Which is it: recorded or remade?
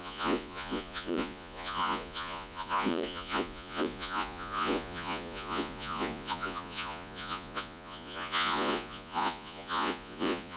remade